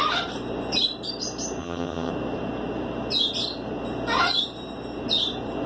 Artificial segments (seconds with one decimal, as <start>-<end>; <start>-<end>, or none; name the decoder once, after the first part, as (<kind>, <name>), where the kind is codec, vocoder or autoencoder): 1.6-2.1 (vocoder, HiFi-GAN)